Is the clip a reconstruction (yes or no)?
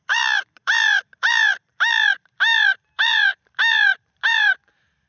yes